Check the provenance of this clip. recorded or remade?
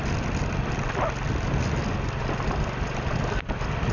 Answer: recorded